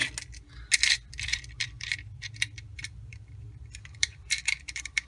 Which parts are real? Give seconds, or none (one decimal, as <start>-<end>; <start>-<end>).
0.0-0.9